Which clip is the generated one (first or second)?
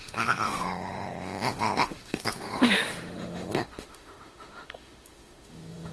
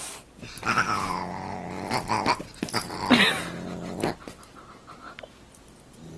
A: first